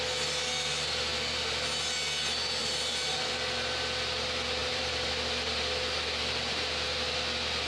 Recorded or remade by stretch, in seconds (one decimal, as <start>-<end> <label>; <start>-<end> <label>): 0.0-2.6 recorded; 2.6-3.3 remade; 3.3-4.6 recorded; 4.6-5.1 remade; 5.1-7.7 recorded